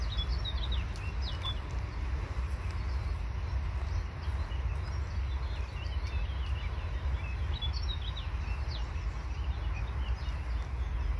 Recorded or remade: recorded